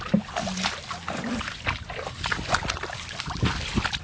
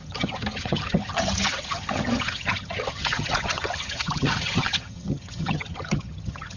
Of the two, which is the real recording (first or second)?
first